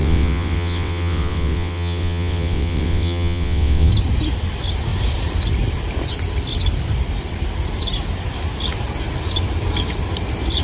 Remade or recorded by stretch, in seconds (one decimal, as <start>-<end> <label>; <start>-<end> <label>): 0.0-3.9 remade; 3.9-10.6 recorded